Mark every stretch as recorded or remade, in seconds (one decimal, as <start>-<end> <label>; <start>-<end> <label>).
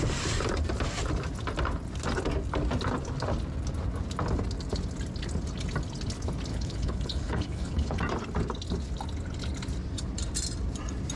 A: 0.0-6.5 recorded; 6.5-8.0 remade; 8.0-11.2 recorded